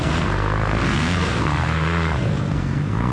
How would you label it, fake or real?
fake